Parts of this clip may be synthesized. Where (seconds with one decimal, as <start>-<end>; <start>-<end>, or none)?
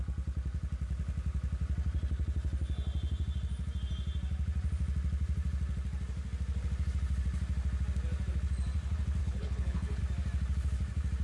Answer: 9.2-10.0